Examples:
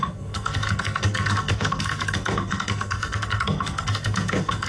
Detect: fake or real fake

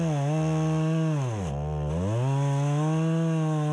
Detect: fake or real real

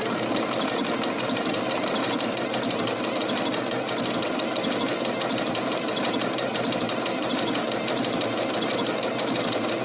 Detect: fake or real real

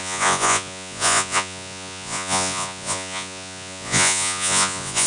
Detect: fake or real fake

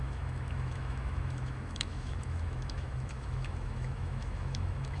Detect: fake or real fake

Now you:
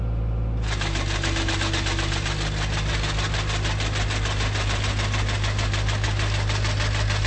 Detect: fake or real real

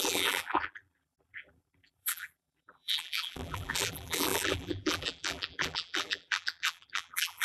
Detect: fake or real fake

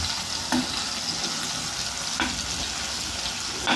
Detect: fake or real real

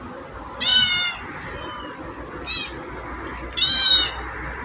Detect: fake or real real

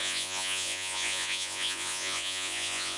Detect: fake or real fake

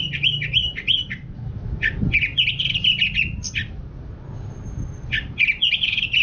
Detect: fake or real real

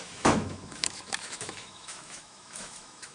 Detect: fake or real fake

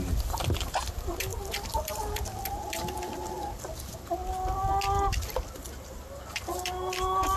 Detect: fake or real real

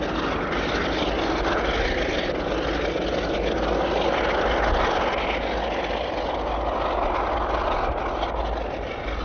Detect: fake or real real